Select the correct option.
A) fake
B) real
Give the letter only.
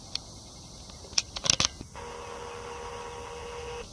B